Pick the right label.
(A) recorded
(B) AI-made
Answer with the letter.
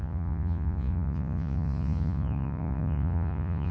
B